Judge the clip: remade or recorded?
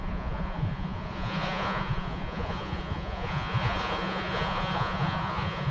remade